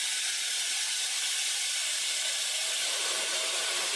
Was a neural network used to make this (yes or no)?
no